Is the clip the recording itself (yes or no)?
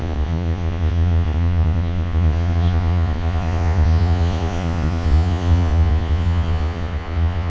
no